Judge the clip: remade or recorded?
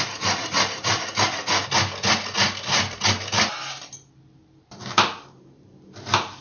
recorded